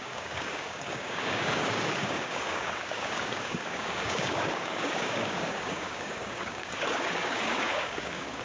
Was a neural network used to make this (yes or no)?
yes